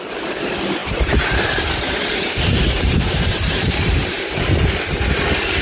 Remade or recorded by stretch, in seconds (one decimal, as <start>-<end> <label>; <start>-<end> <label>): 0.0-0.8 recorded; 0.8-4.2 remade; 4.2-5.6 recorded